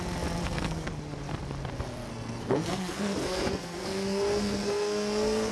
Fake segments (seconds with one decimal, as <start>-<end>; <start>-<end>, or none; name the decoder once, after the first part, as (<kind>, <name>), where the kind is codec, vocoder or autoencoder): 0.4-0.9 (codec, SNAC); 2.1-5.5